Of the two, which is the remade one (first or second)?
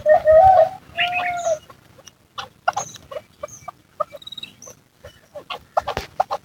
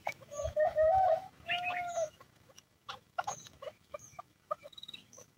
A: second